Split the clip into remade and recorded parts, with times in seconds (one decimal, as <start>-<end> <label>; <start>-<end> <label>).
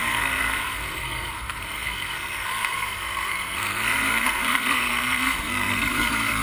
0.0-6.4 remade